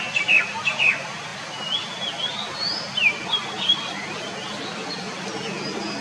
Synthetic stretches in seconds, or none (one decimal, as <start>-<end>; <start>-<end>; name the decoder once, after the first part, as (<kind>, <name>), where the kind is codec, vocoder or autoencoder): none

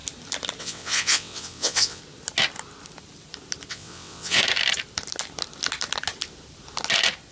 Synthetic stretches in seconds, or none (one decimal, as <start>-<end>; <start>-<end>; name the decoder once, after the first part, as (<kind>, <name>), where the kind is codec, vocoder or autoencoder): 0.6-2.0 (vocoder, WaveNeXt); 3.7-4.4

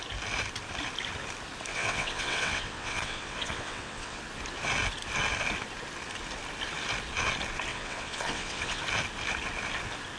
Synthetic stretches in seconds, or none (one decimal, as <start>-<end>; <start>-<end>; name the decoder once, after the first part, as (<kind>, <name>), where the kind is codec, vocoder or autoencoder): 1.7-4.2 (vocoder, WaveNeXt); 7.7-8.8

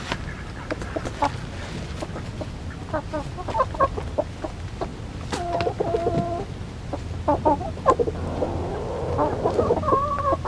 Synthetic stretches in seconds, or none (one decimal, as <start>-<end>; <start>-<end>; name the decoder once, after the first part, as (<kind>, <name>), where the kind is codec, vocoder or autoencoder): none

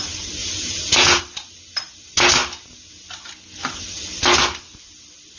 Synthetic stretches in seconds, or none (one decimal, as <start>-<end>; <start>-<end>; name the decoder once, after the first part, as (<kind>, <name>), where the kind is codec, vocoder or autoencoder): 0.4-1.2 (vocoder, Vocos)

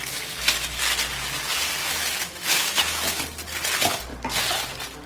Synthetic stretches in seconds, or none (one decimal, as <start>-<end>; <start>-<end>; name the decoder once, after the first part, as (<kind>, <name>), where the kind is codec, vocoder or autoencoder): 1.8-3.2 (autoencoder, DAC-VAE)

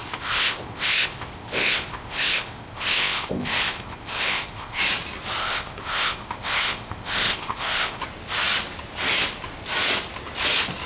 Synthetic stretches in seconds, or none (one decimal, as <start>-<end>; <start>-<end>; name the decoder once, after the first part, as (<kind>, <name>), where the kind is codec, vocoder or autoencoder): 0.0-4.8 (codec, ZipCodec); 5.4-8.0